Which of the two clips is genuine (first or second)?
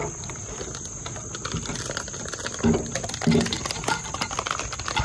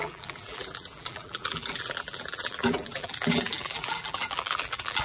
first